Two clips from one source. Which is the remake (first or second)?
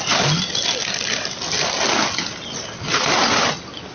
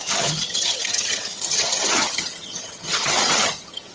second